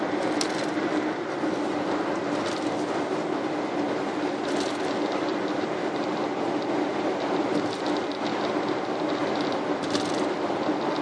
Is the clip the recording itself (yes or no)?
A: yes